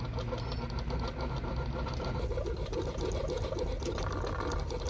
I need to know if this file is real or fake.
real